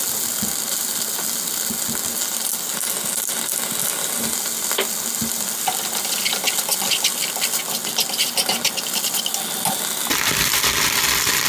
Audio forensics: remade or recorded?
recorded